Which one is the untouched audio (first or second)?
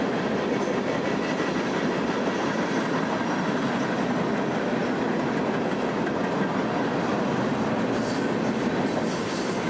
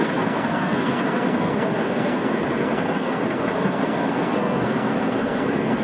first